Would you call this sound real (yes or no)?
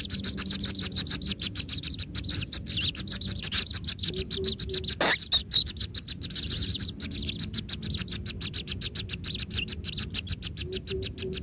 yes